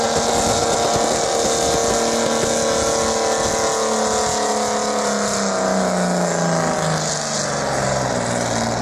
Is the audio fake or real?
real